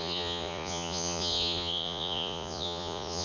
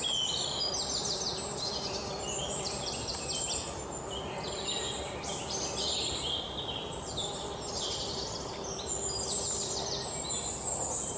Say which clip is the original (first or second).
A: second